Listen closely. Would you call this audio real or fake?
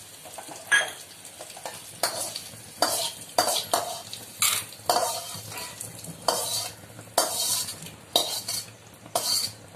real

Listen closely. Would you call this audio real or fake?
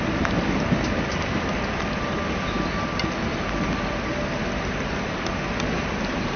real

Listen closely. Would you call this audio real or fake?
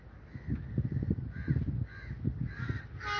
real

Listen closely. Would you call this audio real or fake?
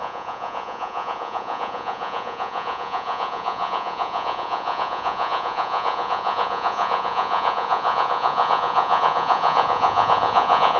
fake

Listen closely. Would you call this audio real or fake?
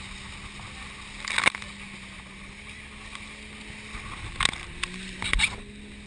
real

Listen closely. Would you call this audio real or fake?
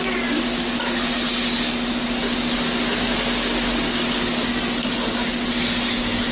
real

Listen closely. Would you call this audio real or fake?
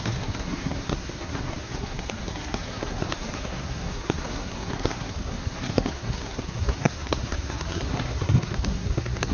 fake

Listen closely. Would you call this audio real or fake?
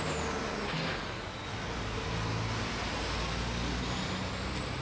real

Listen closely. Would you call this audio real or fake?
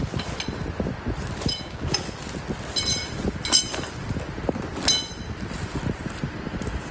real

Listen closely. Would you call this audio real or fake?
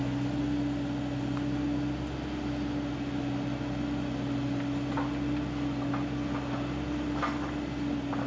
real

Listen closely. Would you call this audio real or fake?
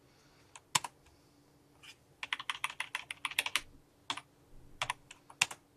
real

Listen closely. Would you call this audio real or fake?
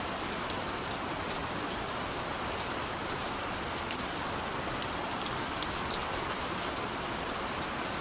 fake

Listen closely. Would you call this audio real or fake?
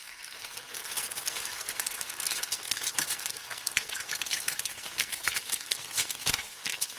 fake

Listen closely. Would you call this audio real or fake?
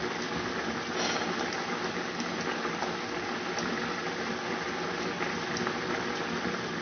real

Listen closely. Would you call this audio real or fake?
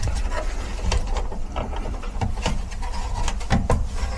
real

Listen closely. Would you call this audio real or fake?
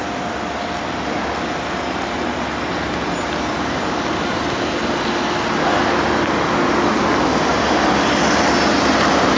real